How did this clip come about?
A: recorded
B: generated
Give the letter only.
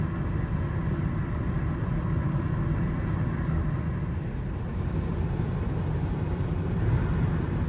A